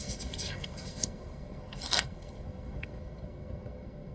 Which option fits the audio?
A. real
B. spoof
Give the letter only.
B